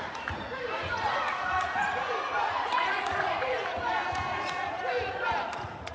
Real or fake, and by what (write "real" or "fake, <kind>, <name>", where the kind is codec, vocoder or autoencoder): fake, vocoder, Vocos